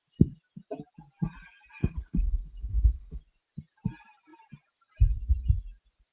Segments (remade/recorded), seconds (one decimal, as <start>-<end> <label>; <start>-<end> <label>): 0.0-1.8 recorded; 1.8-3.2 remade; 3.2-6.1 recorded